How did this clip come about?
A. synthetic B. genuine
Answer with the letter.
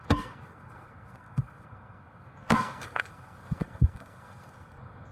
A